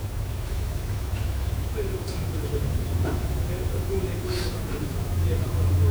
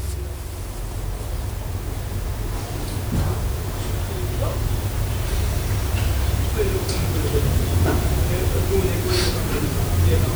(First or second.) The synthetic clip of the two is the first